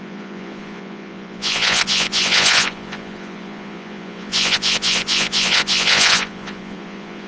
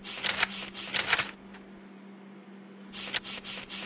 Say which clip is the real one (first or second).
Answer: second